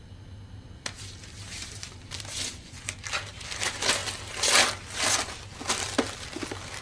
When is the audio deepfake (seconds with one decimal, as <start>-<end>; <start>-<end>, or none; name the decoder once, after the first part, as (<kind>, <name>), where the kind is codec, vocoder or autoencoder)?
2.3-2.8 (vocoder, Vocos)